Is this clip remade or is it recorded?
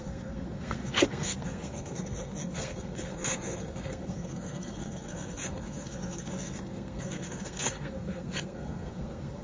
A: remade